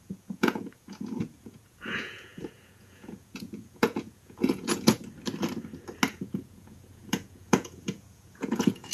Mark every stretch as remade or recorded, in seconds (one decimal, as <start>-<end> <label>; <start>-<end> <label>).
0.0-5.0 remade; 5.0-6.1 recorded; 6.1-8.9 remade